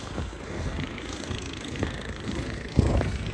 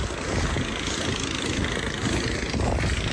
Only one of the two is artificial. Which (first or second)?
first